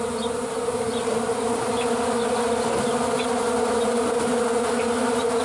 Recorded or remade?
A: recorded